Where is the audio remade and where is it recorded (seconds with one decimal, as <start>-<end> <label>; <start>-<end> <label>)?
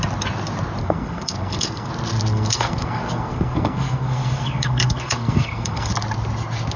0.0-0.8 recorded; 0.8-1.9 remade; 1.9-2.3 recorded; 2.3-5.9 remade; 5.9-6.8 recorded